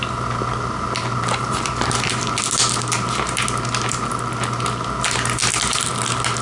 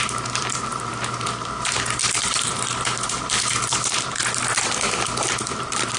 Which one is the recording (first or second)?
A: first